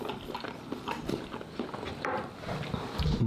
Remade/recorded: recorded